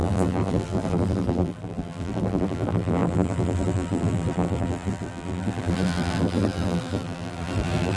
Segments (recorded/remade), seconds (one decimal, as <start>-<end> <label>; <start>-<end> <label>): 0.0-8.0 remade